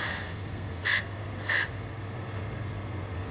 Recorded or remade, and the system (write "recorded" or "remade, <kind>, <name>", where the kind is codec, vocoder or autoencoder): remade, codec, SNAC